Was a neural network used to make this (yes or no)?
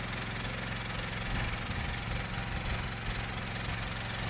no